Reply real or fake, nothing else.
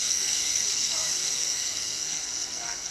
fake